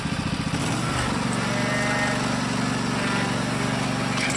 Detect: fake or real real